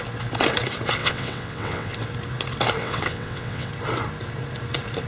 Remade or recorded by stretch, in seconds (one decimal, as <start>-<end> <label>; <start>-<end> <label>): 0.0-1.0 recorded; 1.0-1.9 remade; 1.9-2.8 recorded; 2.8-3.7 remade; 3.7-5.1 recorded